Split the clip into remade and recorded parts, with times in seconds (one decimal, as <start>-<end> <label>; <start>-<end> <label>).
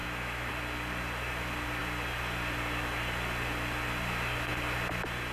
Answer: 0.0-0.5 remade; 0.5-5.3 recorded